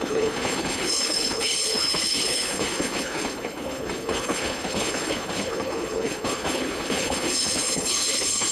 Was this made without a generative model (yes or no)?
no